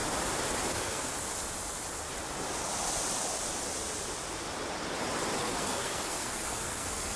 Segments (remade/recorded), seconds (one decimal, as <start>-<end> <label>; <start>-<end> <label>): 0.0-0.7 recorded; 0.7-1.1 remade; 1.1-5.4 recorded; 5.4-7.2 remade